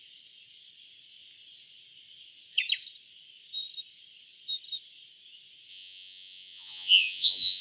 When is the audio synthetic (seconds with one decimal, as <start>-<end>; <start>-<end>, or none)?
5.7-7.6